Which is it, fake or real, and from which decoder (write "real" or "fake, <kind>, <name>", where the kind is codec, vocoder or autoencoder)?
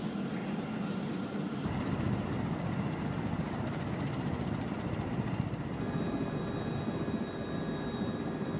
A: fake, vocoder, BigVGAN v2